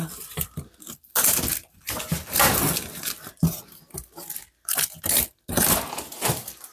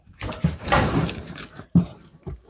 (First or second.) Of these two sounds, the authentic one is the first